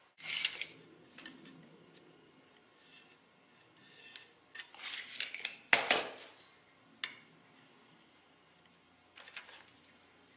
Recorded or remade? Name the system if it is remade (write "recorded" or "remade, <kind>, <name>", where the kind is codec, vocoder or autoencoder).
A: recorded